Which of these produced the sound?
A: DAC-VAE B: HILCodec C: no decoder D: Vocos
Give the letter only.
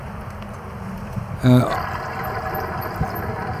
C